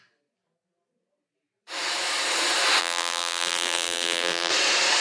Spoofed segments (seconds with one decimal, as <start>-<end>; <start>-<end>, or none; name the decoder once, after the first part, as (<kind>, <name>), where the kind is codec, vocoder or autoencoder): 2.8-4.5 (vocoder, BigVGAN v2)